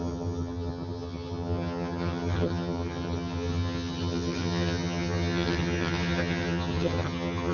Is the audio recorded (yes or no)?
no